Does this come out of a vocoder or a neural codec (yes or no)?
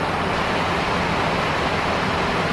no